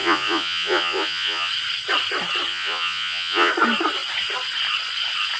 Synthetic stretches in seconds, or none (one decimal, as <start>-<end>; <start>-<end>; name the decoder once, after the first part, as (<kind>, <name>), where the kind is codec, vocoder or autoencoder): 0.0-1.5 (vocoder, Vocos); 2.5-3.5